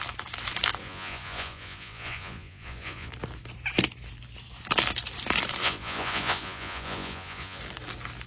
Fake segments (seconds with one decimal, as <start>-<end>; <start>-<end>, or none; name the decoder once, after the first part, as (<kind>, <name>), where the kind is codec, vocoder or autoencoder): 0.8-3.1 (vocoder, Vocos); 5.6-7.6